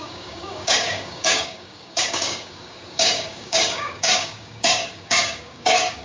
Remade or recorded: remade